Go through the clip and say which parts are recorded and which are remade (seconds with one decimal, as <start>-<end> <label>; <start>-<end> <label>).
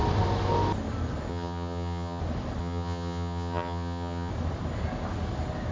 0.0-1.3 recorded; 1.3-2.2 remade; 2.2-2.6 recorded; 2.6-4.3 remade; 4.3-5.7 recorded